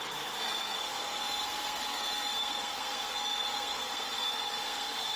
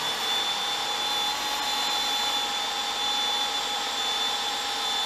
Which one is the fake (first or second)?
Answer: first